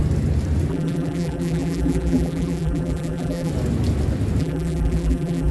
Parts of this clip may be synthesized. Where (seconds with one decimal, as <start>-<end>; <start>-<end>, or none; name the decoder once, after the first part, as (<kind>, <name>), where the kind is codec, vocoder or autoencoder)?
0.7-3.5 (vocoder, BigVGAN v2); 4.4-5.5